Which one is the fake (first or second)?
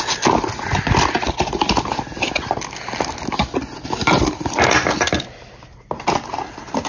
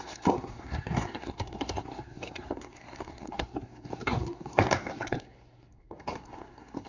second